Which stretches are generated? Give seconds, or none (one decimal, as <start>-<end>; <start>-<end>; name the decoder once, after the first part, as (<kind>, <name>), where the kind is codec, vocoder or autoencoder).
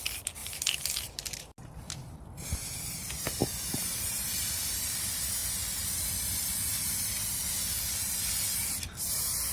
0.4-1.9 (vocoder, BigVGAN v2); 3.4-4.9